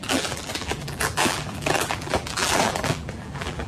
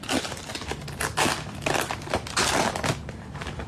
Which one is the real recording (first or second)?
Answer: second